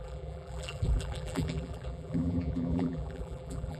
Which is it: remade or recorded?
remade